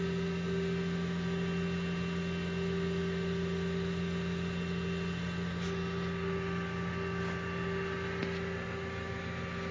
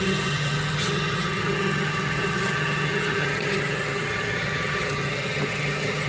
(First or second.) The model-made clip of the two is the second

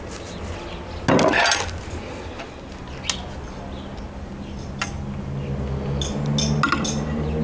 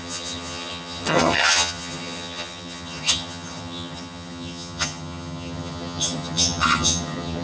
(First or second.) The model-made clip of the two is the second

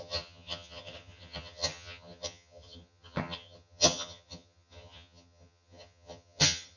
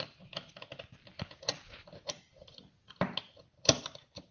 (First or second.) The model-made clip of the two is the first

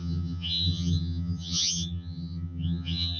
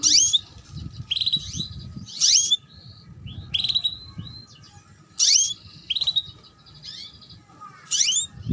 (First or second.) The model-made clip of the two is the first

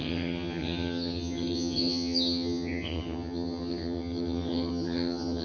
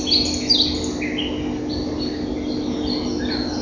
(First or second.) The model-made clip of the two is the first